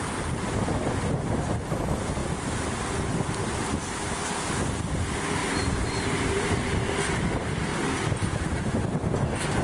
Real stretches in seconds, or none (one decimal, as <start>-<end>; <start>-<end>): 0.0-5.4; 7.0-9.6